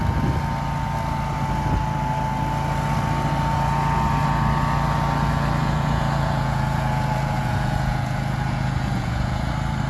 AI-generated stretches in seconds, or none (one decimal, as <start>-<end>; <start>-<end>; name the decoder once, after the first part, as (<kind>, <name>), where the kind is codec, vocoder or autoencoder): 5.6-9.5 (vocoder, Vocos)